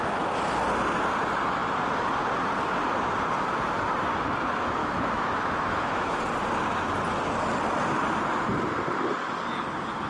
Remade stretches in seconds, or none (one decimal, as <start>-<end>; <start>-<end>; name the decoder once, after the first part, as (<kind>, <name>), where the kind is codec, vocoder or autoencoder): 4.8-6.2 (autoencoder, DAC-VAE)